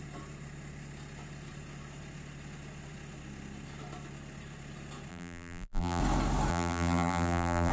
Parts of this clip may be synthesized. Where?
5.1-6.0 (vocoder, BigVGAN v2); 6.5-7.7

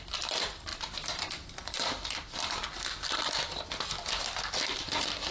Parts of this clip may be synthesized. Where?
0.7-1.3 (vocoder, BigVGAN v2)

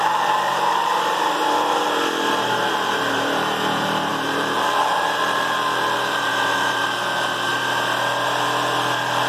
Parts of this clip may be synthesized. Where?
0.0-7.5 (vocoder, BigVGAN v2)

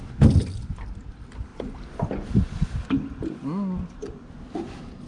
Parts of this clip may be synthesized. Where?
none

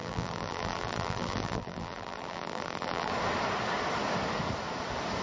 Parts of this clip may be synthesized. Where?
0.0-3.1 (vocoder, BigVGAN v2)

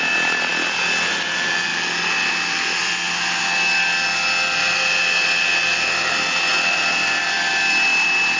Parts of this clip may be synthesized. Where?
4.6-6.1 (vocoder, BigVGAN v2); 6.5-7.5